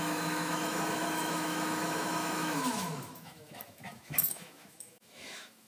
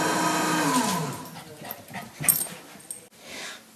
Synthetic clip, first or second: first